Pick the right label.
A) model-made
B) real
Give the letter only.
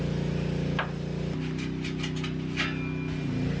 B